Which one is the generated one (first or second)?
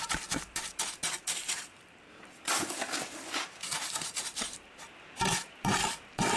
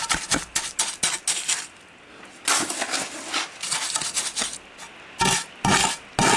first